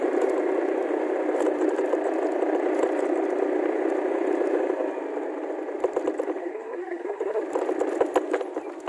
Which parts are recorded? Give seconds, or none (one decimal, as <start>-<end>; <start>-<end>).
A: 0.0-6.4; 7.4-8.9